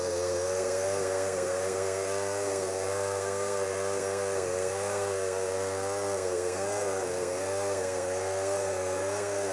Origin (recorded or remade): remade